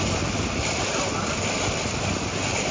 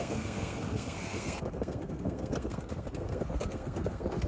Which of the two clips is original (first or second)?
first